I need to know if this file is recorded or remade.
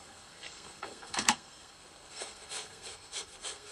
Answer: remade